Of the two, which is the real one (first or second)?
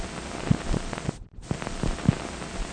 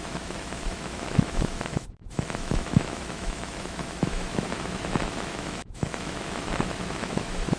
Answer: first